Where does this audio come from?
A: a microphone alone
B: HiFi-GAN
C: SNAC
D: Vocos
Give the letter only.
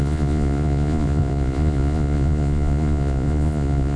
D